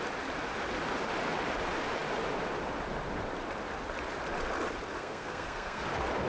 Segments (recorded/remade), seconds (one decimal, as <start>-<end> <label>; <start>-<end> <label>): 0.0-5.0 recorded; 5.0-5.8 remade; 5.8-6.3 recorded